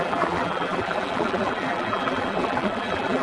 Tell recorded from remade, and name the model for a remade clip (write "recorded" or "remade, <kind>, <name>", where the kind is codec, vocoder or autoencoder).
remade, vocoder, BigVGAN v2